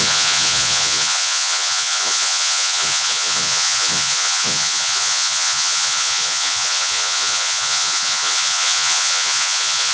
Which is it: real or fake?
fake